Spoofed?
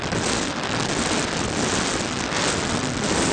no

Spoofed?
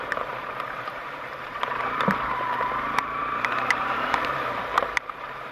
yes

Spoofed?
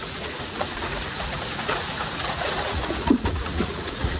yes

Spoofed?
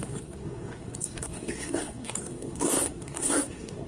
yes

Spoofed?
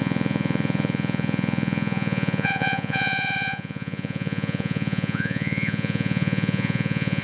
yes